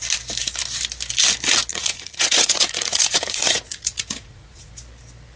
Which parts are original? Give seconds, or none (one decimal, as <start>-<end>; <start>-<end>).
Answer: 0.0-1.7; 4.7-5.4